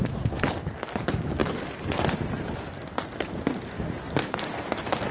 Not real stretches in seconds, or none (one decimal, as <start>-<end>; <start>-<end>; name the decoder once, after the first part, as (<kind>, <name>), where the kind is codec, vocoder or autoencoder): none